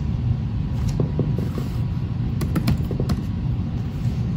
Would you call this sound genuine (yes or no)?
yes